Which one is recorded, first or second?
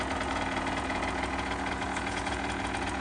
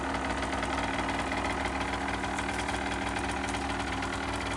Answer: second